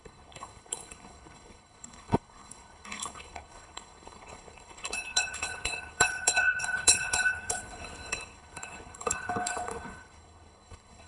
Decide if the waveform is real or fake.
fake